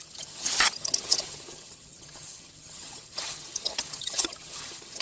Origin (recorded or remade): remade